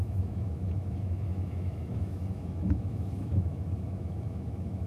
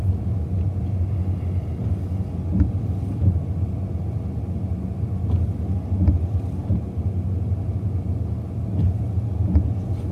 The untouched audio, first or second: second